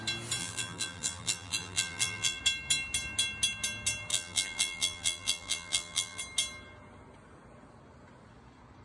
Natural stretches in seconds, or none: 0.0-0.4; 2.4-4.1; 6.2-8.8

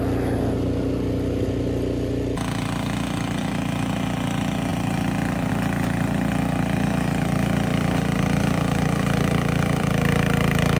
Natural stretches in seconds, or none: 0.0-4.7; 5.5-7.7; 9.9-10.8

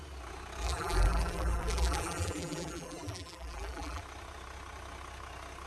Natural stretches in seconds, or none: 0.0-0.6; 4.0-5.7

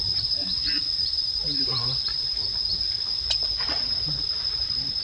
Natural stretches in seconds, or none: 2.4-4.6